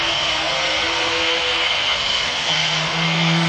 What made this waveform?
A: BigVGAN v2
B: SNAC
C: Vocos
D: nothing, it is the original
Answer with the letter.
B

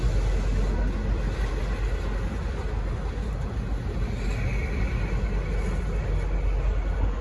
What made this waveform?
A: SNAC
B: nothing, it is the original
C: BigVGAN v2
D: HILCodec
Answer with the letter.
B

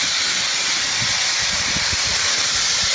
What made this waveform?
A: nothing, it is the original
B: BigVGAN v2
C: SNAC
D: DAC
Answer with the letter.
A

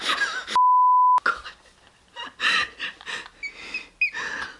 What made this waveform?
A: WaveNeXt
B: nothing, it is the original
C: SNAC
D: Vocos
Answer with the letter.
B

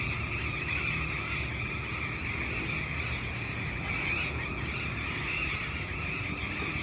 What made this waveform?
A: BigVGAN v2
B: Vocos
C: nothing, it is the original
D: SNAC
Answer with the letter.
C